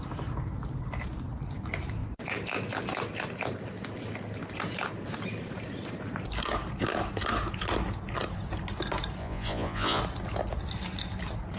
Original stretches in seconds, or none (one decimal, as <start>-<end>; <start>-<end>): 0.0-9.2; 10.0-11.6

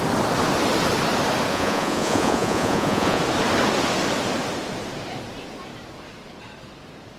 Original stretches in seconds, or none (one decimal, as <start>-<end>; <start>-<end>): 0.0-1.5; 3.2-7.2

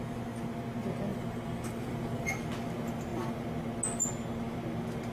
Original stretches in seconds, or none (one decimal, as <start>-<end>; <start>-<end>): 0.0-1.1; 2.2-5.1

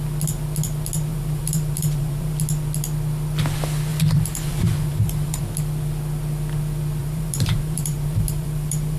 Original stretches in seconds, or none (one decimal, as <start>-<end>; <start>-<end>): 0.0-1.1; 2.3-3.9; 5.4-7.0

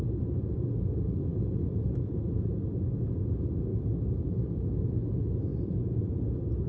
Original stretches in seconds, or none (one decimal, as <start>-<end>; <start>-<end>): 0.0-1.3; 1.9-3.7; 4.2-5.5; 6.1-6.7

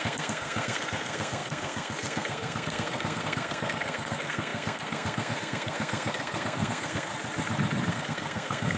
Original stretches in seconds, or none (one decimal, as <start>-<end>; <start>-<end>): 7.1-7.9